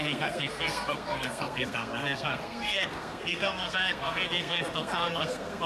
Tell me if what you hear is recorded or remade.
remade